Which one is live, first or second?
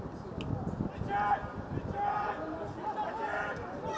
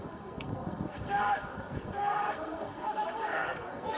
first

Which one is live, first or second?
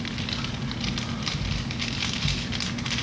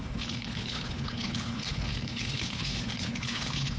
first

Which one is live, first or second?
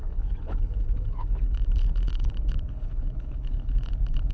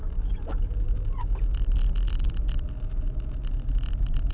second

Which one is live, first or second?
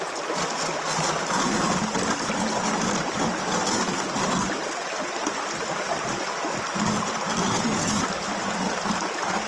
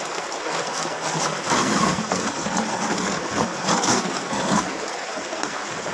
first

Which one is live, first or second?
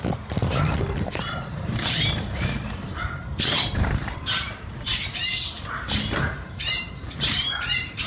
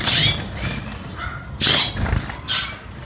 second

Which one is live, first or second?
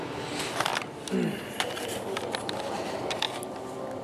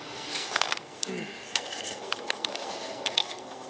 first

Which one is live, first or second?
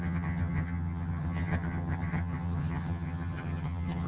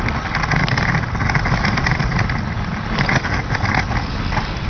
second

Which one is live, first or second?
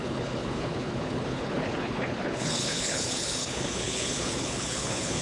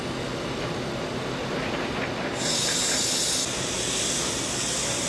second